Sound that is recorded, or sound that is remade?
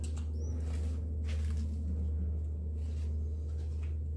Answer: recorded